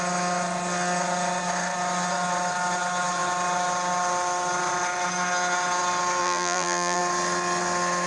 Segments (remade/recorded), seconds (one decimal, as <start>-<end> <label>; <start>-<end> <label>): 0.0-6.2 recorded; 6.2-7.0 remade; 7.0-8.1 recorded